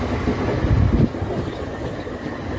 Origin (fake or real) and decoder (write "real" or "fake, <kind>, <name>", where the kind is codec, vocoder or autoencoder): real